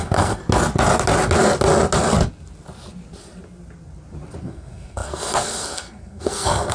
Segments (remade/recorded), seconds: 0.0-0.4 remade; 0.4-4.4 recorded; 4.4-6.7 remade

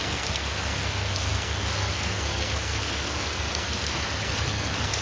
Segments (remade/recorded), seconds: 0.0-5.0 remade

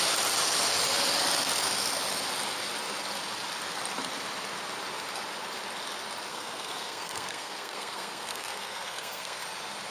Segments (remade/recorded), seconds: 0.0-6.3 recorded; 6.3-9.4 remade; 9.4-9.9 recorded

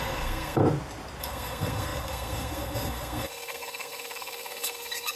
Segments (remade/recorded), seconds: 0.0-0.6 remade; 0.6-1.2 recorded; 1.2-5.2 remade

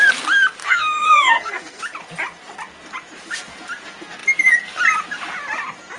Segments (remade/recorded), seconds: 0.0-0.6 recorded; 0.6-1.8 remade; 1.8-6.0 recorded

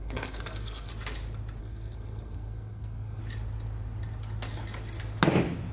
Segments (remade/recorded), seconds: 0.0-0.9 remade; 0.9-1.6 recorded; 1.6-3.2 remade; 3.2-5.7 recorded

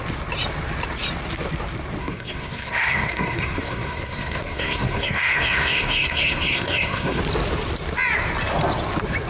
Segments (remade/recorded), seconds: 0.0-2.0 recorded; 2.0-7.2 remade; 7.2-9.3 recorded